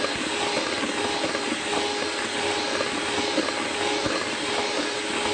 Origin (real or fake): real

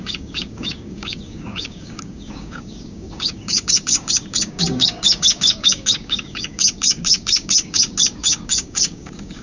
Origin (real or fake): fake